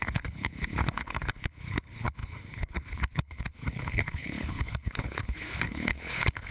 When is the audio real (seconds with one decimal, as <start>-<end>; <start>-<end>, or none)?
none